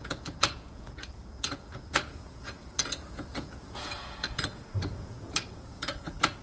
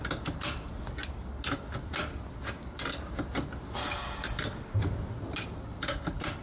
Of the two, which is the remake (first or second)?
first